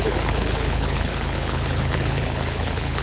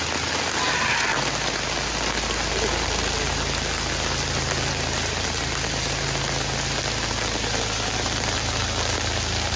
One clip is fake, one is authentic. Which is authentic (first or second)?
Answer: second